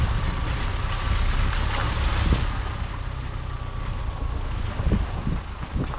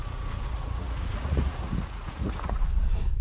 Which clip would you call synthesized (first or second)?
second